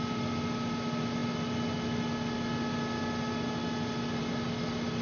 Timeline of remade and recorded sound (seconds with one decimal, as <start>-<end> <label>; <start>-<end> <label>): 0.0-5.0 recorded